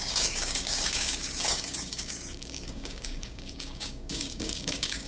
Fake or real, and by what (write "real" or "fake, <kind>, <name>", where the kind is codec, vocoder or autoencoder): fake, codec, DAC